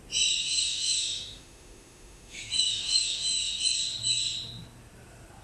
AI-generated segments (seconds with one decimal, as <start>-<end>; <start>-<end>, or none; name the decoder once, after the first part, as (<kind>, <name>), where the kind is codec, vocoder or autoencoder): 0.4-3.6 (autoencoder, DAC-VAE)